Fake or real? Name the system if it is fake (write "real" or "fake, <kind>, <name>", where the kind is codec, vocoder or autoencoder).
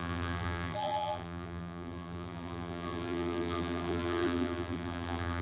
fake, vocoder, BigVGAN v2